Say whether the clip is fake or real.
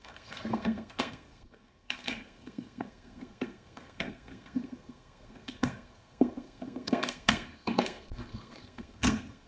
fake